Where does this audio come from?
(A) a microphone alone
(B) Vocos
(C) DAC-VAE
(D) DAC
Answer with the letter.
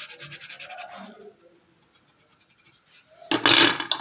A